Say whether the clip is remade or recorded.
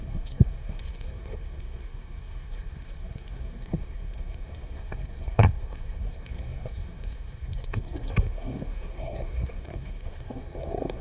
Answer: remade